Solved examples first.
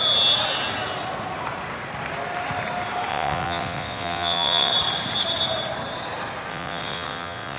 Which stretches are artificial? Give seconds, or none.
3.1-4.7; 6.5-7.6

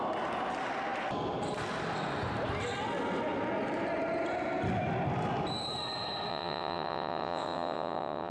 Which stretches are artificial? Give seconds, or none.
6.3-8.3

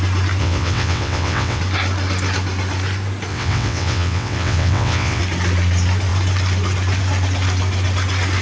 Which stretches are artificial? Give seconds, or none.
0.4-1.6; 3.3-5.2